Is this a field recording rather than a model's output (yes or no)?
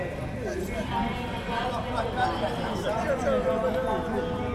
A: yes